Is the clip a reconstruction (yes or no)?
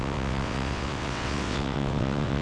yes